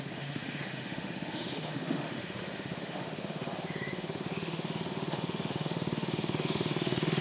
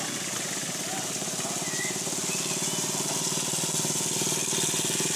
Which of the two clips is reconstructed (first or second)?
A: first